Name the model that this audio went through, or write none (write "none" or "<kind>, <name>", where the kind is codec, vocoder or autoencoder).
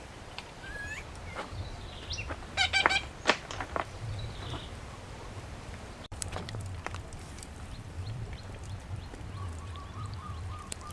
vocoder, BigVGAN v2